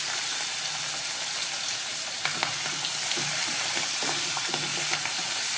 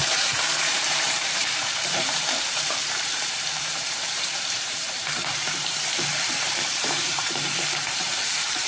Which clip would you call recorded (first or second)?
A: first